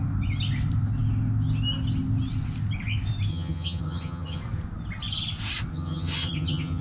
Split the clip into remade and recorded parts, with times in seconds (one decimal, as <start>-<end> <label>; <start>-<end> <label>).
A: 0.0-3.3 recorded; 3.3-4.4 remade; 4.4-5.7 recorded; 5.7-6.8 remade